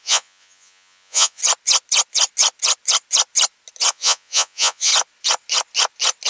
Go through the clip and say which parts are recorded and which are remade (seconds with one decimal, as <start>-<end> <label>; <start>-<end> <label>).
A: 0.0-1.4 remade; 1.4-3.9 recorded; 3.9-4.9 remade; 4.9-6.3 recorded